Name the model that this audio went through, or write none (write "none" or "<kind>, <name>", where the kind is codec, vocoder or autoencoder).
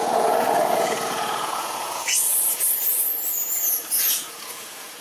vocoder, Vocos